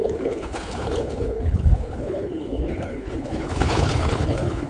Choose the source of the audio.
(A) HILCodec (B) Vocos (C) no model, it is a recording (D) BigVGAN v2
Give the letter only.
A